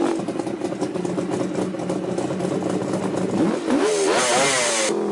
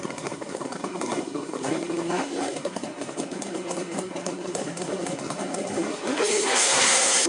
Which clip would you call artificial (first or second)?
second